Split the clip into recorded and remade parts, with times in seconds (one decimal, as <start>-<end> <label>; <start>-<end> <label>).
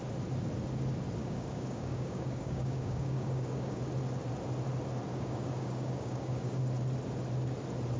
0.0-1.2 recorded; 1.2-3.8 remade; 3.8-5.1 recorded; 5.1-6.6 remade; 6.6-8.0 recorded